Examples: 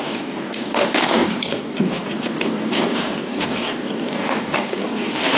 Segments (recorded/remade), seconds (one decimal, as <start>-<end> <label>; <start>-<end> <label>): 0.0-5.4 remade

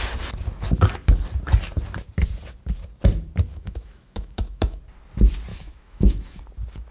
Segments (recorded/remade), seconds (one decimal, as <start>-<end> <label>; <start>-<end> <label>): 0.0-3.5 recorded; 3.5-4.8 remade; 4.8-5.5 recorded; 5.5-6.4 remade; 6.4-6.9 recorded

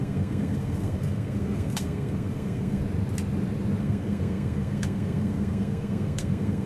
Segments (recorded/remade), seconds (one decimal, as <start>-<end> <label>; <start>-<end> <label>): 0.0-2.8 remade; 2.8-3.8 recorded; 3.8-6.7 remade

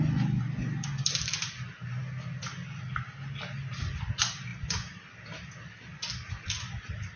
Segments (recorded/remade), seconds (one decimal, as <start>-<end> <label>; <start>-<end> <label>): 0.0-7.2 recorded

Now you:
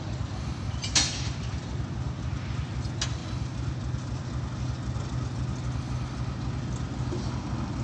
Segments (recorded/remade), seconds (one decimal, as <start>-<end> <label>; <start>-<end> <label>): 0.0-7.8 recorded

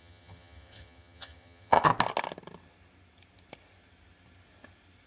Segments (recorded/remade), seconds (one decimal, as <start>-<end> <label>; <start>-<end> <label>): 0.0-1.9 remade; 1.9-5.1 recorded

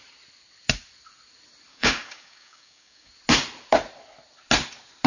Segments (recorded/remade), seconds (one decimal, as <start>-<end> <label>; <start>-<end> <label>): 0.0-1.7 recorded; 1.7-3.1 remade; 3.1-5.1 recorded